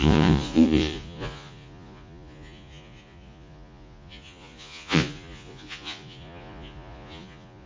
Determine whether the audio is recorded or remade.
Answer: remade